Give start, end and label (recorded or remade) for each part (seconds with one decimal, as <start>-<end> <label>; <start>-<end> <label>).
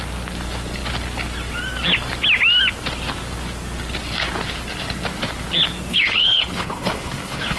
0.0-5.9 recorded; 5.9-7.6 remade